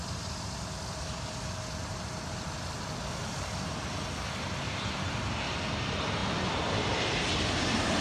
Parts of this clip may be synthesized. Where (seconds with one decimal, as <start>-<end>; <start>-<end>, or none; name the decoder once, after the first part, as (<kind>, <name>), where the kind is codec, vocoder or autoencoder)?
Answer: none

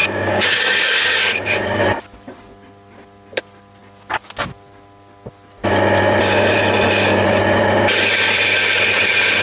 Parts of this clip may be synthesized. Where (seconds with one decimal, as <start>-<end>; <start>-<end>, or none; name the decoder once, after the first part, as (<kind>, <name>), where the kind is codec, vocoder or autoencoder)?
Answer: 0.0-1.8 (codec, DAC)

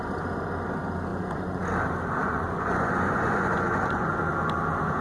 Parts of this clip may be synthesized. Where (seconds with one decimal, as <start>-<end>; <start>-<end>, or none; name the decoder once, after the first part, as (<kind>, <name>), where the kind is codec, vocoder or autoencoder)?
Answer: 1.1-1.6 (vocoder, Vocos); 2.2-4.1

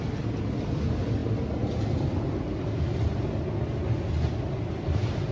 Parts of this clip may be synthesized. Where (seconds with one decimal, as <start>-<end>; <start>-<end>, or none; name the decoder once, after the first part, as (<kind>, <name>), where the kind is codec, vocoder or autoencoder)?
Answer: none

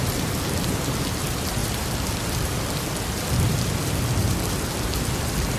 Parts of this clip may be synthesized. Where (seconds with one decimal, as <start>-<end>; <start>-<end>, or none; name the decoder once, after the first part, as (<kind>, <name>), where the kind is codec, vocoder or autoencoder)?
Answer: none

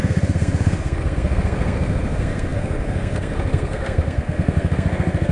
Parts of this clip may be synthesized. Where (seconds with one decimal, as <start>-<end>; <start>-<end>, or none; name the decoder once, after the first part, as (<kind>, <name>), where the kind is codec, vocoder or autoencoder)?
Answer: 0.0-5.3 (codec, SNAC)

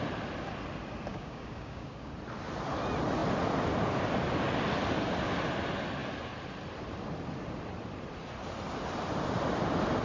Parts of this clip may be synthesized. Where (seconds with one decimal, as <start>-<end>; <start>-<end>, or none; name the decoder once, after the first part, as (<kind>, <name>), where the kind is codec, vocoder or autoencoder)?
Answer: 1.1-2.1 (codec, DAC)